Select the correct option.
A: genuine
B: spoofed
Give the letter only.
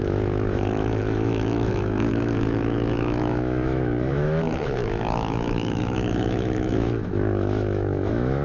B